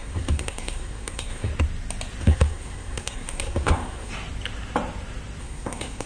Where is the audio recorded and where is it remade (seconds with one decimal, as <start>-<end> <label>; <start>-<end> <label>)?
0.0-1.5 remade; 1.5-2.2 recorded; 2.2-4.1 remade; 4.1-5.4 recorded; 5.4-6.1 remade